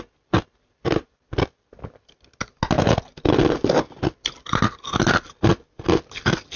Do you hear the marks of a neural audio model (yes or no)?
no